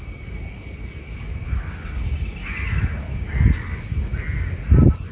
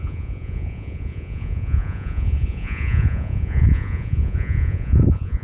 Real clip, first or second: first